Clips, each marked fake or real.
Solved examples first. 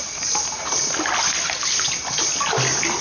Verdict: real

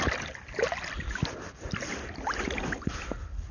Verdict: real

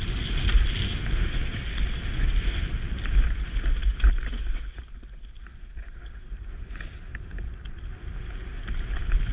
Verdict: real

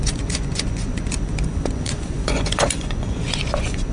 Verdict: fake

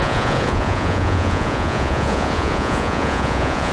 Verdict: fake